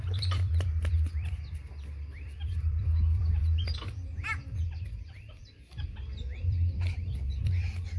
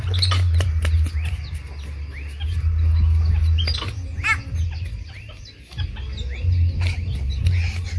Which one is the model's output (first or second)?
first